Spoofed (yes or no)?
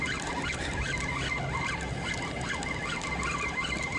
no